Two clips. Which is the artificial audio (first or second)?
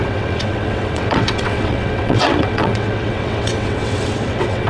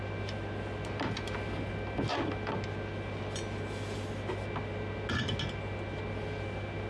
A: first